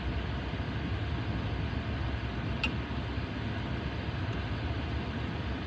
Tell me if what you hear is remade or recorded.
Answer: recorded